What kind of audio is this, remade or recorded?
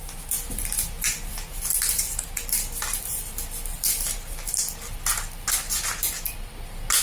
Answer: recorded